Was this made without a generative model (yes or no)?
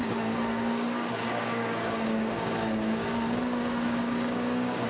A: no